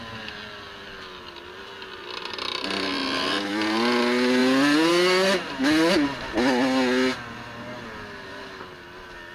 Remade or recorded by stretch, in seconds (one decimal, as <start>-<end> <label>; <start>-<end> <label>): 0.0-3.0 recorded; 3.0-4.0 remade; 4.0-9.3 recorded

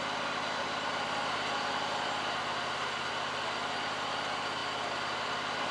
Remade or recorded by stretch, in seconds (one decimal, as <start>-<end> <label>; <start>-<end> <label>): 0.0-0.6 recorded; 0.6-3.1 remade; 3.1-4.6 recorded; 4.6-5.7 remade

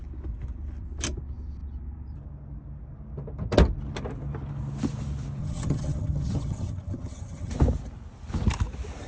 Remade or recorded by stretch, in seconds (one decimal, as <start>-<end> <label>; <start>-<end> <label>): 0.0-5.4 recorded; 5.4-7.5 remade; 7.5-9.1 recorded

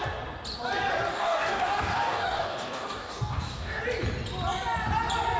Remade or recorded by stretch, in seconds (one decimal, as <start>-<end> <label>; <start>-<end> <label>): 0.0-1.1 recorded; 1.1-3.8 remade; 3.8-5.4 recorded

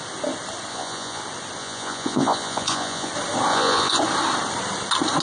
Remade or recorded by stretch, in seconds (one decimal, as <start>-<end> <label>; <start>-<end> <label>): 0.0-0.7 recorded; 0.7-1.2 remade; 1.2-1.6 recorded; 1.6-3.1 remade; 3.1-3.5 recorded; 3.5-4.0 remade; 4.0-5.2 recorded

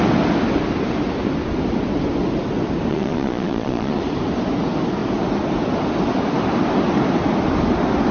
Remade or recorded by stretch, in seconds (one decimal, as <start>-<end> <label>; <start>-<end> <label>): 0.0-2.9 recorded; 2.9-4.0 remade; 4.0-8.1 recorded